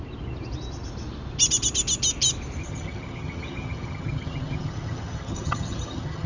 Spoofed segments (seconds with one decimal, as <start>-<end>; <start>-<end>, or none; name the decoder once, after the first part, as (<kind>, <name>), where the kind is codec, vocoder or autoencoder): 2.6-6.3 (vocoder, HiFi-GAN)